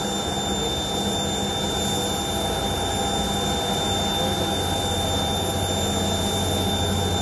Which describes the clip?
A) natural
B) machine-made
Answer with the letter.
A